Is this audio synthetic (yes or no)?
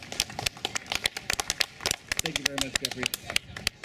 no